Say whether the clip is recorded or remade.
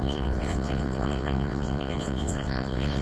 remade